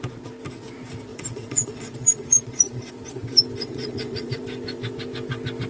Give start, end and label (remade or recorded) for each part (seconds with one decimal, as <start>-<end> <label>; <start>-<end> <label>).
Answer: 0.0-1.1 recorded; 1.1-2.9 remade; 2.9-3.6 recorded; 3.6-4.4 remade; 4.4-5.7 recorded